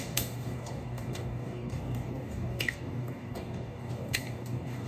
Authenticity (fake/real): fake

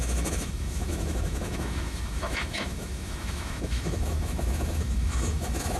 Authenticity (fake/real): fake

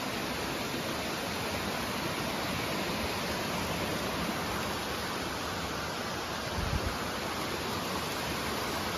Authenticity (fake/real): real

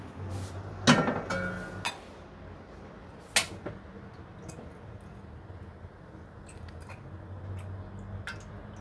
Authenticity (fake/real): real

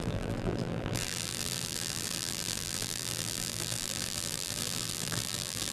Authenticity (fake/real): fake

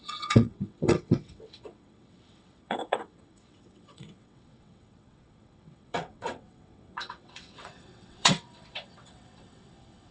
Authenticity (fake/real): fake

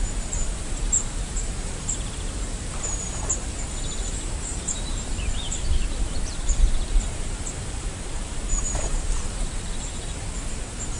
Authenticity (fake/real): fake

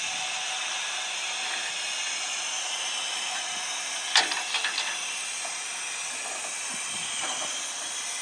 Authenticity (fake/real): real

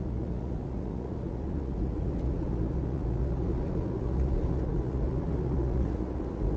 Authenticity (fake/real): fake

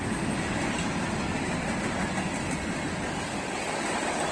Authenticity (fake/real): real